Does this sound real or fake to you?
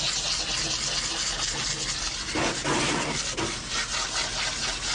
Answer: real